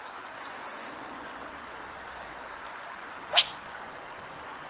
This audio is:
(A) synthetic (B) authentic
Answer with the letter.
A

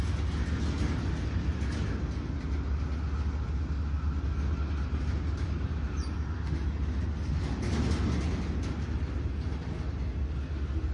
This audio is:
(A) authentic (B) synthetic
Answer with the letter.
A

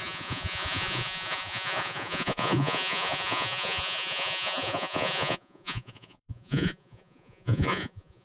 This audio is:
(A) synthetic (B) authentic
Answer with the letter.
A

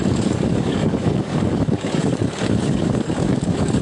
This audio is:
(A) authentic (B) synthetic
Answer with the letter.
B